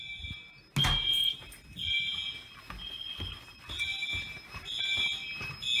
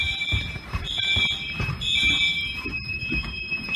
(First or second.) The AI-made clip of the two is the second